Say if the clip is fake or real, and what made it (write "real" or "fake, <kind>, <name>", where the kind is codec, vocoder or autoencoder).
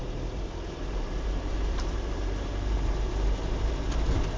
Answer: fake, vocoder, BigVGAN v2